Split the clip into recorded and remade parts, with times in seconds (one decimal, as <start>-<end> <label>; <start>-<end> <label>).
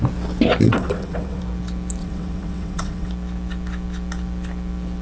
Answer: 0.0-0.6 recorded; 0.6-1.4 remade; 1.4-2.0 recorded; 2.0-3.1 remade; 3.1-5.0 recorded